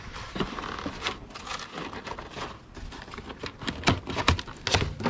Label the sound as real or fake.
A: real